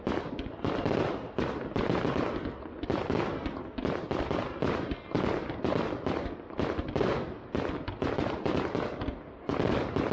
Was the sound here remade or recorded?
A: recorded